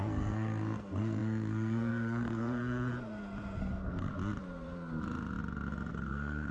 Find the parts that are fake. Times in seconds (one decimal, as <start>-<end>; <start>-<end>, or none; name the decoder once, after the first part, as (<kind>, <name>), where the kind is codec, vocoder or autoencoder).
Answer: 0.0-2.9 (codec, SNAC); 3.6-4.1; 5.9-6.5